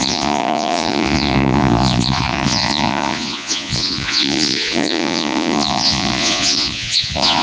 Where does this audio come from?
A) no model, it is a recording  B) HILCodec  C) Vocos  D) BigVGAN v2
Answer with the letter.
C